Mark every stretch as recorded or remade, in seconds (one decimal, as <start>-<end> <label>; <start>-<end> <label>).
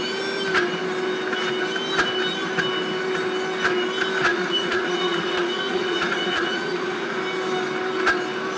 0.0-4.3 recorded; 4.3-7.2 remade; 7.2-8.6 recorded